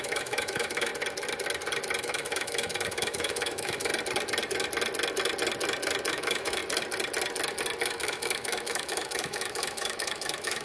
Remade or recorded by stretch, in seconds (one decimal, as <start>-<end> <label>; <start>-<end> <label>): 0.0-0.9 remade; 0.9-2.0 recorded; 2.0-3.9 remade; 3.9-6.1 recorded; 6.1-6.6 remade; 6.6-7.8 recorded; 7.8-10.6 remade